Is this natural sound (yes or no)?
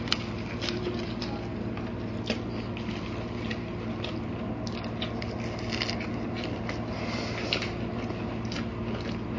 yes